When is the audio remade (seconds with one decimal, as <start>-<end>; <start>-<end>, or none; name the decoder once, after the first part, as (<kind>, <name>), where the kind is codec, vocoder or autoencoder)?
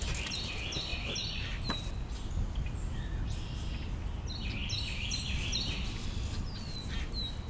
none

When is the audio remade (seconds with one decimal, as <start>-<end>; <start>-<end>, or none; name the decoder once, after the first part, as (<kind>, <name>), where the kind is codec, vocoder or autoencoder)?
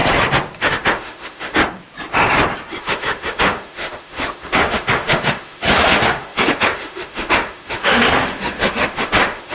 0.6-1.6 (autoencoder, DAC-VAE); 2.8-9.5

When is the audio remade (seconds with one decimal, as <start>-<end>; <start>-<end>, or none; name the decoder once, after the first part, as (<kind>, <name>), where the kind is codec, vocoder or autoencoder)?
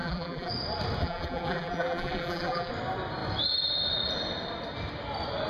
0.0-0.5 (vocoder, BigVGAN v2); 1.0-2.7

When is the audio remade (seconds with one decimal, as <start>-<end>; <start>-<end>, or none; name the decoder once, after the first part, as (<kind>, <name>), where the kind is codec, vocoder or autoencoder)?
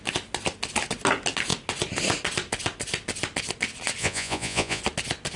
4.0-4.8 (vocoder, Vocos)